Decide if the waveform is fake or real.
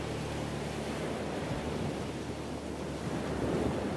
real